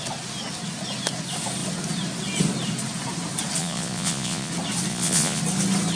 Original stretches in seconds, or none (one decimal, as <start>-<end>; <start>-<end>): 0.0-3.6; 4.5-4.9; 5.4-6.0